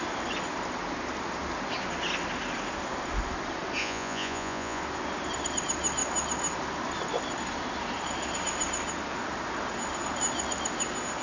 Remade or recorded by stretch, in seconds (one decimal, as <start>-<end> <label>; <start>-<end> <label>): 0.0-3.8 recorded; 3.8-4.8 remade; 4.8-11.2 recorded